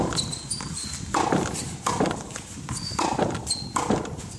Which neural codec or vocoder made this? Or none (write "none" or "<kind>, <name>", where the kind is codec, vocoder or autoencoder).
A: none